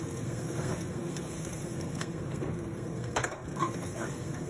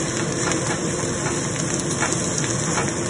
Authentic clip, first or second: second